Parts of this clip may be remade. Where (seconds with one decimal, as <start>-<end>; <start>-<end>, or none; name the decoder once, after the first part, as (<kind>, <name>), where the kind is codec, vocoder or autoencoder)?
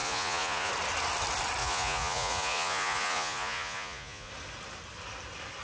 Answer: 0.0-0.7 (vocoder, Vocos); 1.6-4.3